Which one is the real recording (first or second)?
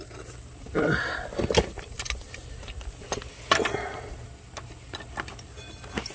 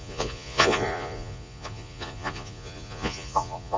first